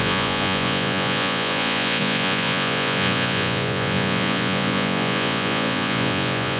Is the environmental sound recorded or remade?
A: remade